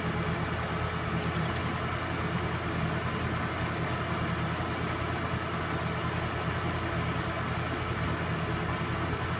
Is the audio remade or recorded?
recorded